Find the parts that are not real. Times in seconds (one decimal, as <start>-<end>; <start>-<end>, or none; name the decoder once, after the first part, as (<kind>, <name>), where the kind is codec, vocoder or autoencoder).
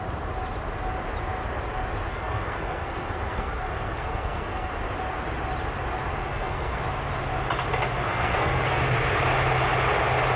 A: 2.1-4.7 (codec, SNAC); 6.2-6.8; 8.1-8.8